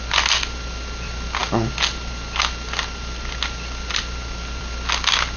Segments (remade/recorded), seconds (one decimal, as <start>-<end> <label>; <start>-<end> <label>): 0.0-5.4 recorded